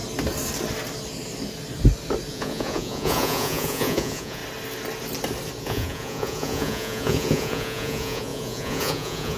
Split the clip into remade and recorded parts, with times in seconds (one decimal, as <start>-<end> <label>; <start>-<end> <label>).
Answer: 0.0-2.3 recorded; 2.3-4.4 remade; 4.4-5.6 recorded; 5.6-9.4 remade